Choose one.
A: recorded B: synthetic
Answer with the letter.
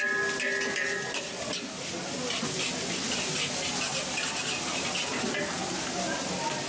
A